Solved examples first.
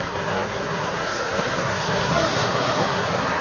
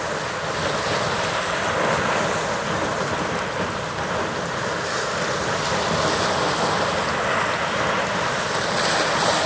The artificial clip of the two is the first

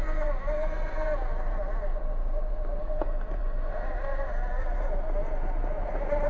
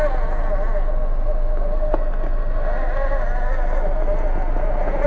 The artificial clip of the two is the first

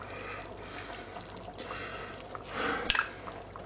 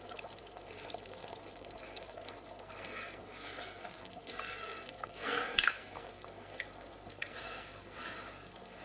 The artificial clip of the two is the second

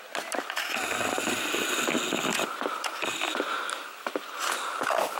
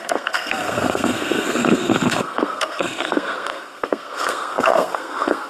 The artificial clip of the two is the second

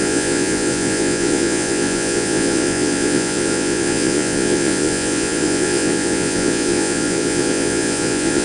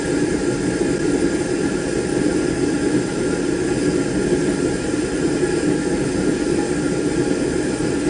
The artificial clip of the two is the first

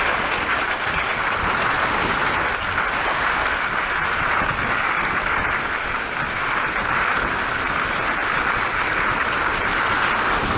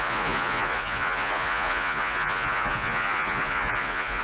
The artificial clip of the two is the second